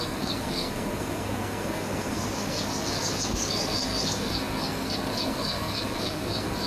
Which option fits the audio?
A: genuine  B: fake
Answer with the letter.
B